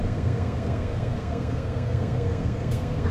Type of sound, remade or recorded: remade